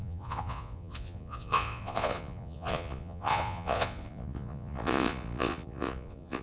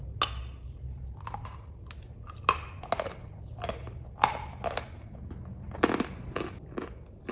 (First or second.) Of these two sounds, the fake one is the first